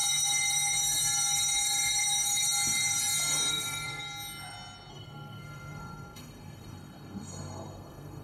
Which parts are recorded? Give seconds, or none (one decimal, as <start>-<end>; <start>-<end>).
0.0-3.5; 4.0-4.9